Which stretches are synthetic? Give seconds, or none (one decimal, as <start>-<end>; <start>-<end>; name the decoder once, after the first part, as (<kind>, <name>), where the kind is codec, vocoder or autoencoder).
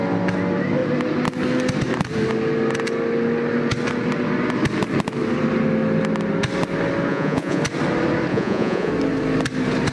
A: 7.1-7.6 (vocoder, Vocos); 8.3-8.9